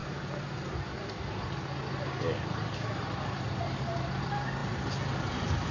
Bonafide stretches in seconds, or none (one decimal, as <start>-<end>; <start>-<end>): 0.0-5.7